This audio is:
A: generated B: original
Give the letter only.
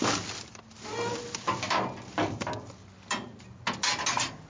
B